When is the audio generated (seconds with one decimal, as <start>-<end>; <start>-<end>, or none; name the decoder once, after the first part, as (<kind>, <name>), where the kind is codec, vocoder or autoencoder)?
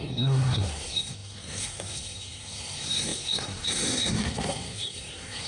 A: 0.0-5.5 (codec, SNAC)